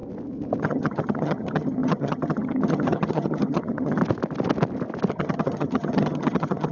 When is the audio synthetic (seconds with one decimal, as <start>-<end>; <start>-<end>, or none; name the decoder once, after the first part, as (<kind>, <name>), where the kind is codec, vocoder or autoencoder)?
0.6-4.0 (vocoder, HiFi-GAN); 5.1-6.7

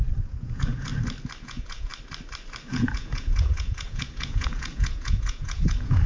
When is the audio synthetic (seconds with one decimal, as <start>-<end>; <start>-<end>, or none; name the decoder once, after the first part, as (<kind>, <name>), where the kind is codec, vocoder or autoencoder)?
0.0-0.9 (vocoder, Vocos); 1.4-1.9; 2.7-6.1

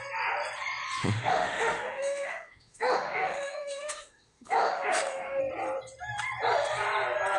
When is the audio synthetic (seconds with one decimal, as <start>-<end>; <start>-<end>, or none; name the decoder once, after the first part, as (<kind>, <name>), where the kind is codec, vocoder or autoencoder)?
1.0-5.4 (autoencoder, DAC-VAE)

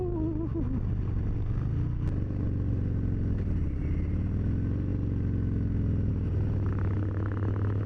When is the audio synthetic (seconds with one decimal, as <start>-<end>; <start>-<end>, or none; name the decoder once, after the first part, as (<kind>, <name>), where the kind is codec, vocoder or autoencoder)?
none

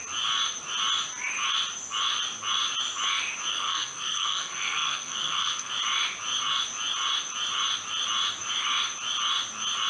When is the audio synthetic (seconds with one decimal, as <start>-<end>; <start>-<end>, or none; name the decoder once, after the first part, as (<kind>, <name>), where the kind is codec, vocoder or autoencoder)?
3.5-5.7 (codec, SNAC)

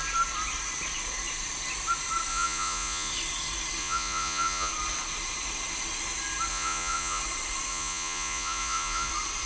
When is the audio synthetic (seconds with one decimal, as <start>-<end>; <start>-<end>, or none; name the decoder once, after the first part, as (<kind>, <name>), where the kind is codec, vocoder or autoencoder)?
2.3-3.1 (vocoder, Vocos); 3.8-4.7; 6.5-7.2; 7.7-9.1